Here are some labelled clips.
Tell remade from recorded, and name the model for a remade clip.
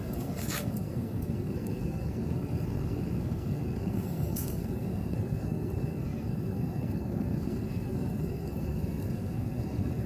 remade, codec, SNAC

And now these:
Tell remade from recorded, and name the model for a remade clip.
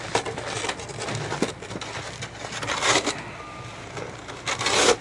recorded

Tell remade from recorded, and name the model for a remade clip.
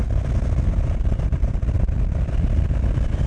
recorded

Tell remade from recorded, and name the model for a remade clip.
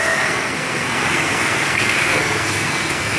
remade, codec, SNAC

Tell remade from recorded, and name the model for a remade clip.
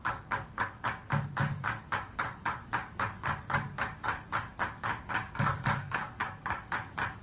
remade, codec, DAC